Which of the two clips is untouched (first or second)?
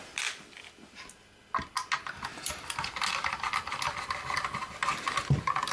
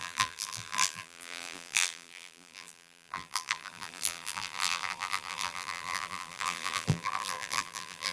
first